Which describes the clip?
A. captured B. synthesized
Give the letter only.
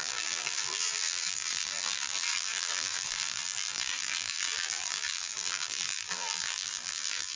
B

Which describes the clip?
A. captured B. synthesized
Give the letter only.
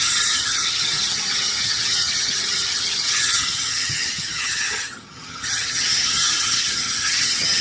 B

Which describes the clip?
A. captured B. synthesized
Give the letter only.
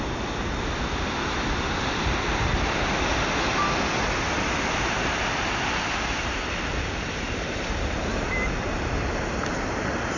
A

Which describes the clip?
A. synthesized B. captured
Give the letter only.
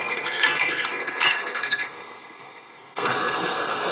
A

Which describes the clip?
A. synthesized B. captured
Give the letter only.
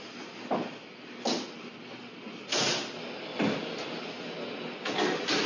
B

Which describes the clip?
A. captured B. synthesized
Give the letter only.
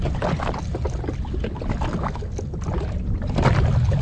A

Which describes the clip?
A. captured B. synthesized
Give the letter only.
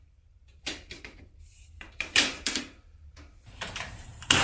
B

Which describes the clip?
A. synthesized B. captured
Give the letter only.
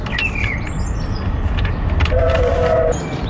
A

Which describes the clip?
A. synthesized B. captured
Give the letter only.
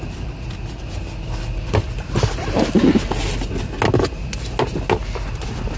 B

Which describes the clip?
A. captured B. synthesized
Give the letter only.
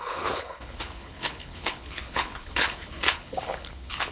B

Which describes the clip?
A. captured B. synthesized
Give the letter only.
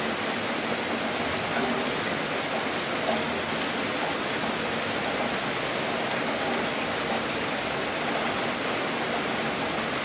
A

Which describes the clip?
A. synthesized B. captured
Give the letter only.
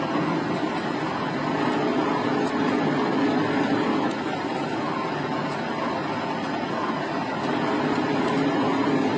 B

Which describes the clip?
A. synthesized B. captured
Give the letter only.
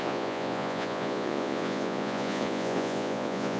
A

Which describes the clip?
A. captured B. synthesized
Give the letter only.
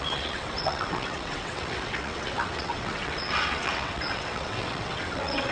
B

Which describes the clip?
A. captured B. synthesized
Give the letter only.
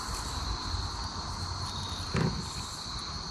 A